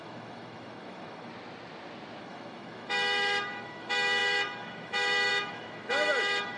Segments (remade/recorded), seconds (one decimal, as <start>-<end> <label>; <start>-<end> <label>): 0.0-1.3 remade; 1.3-2.2 recorded; 2.2-6.6 remade